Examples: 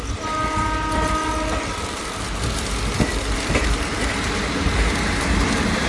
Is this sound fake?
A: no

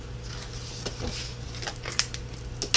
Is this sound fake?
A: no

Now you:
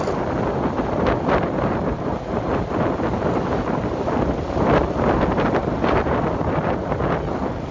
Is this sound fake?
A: yes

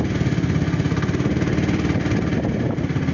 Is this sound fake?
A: no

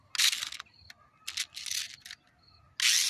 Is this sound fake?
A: no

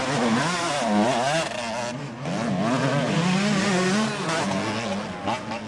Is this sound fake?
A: no